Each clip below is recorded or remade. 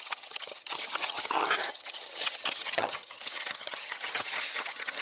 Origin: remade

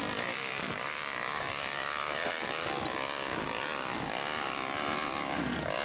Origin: recorded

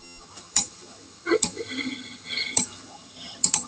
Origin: remade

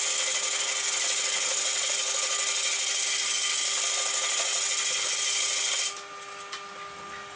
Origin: recorded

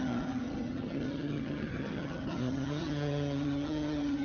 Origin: remade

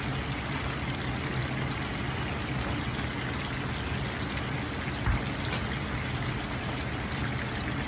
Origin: recorded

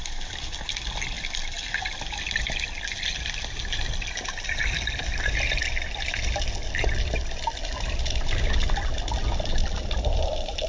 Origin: recorded